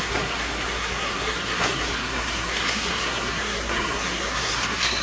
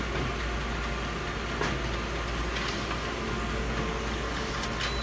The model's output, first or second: first